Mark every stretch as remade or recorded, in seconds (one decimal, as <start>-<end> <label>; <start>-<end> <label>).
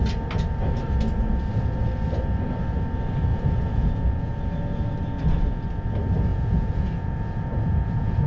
0.0-3.3 recorded; 3.3-4.3 remade; 4.3-6.3 recorded; 6.3-8.3 remade